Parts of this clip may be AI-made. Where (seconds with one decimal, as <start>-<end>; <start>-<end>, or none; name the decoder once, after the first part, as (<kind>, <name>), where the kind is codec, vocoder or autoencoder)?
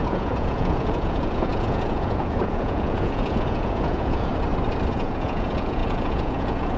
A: 0.0-4.3 (vocoder, Vocos); 4.9-6.8